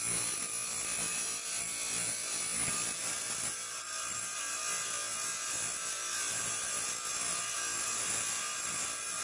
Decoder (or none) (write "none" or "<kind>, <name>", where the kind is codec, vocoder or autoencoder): none